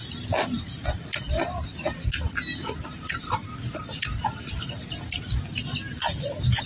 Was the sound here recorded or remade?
recorded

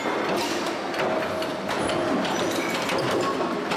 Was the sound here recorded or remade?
recorded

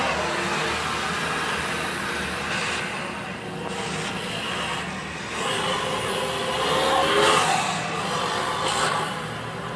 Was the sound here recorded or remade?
recorded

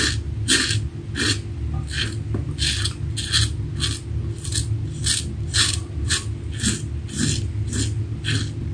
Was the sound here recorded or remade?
recorded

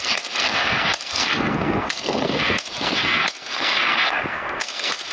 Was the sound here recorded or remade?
remade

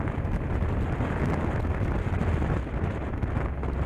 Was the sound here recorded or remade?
recorded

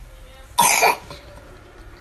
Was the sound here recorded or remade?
recorded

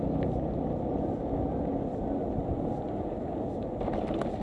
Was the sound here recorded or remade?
recorded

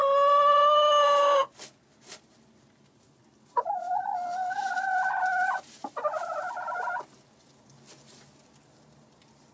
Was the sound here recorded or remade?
recorded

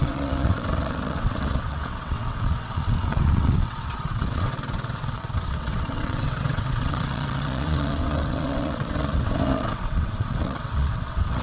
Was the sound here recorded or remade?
remade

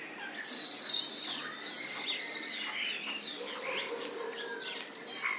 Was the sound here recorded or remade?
recorded